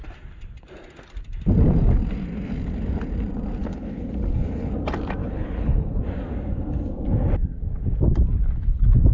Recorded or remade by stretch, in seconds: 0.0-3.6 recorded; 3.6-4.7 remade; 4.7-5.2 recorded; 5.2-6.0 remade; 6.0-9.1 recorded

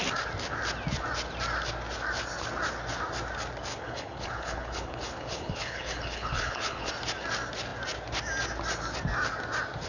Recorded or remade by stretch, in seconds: 0.0-3.7 recorded; 3.7-6.9 remade; 6.9-9.9 recorded

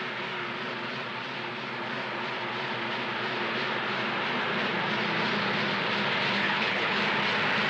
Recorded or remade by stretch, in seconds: 0.0-6.4 recorded; 6.4-7.0 remade; 7.0-7.7 recorded

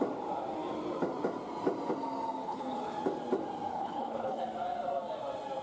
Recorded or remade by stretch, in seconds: 0.0-2.4 recorded; 2.4-2.9 remade; 2.9-3.7 recorded; 3.7-4.4 remade; 4.4-5.6 recorded

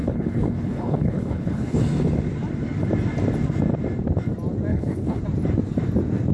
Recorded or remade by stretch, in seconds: 0.0-1.8 remade; 1.8-4.7 recorded; 4.7-5.2 remade; 5.2-6.3 recorded

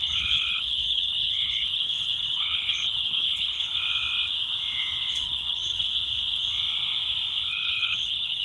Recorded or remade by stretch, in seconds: 0.0-3.7 remade; 3.7-5.1 recorded; 5.1-5.9 remade; 5.9-7.5 recorded; 7.5-8.4 remade

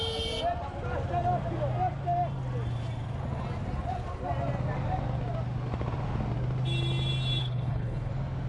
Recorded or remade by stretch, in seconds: 0.0-7.4 recorded; 7.4-8.1 remade; 8.1-8.5 recorded